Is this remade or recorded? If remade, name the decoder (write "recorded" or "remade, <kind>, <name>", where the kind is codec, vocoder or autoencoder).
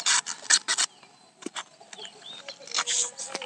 recorded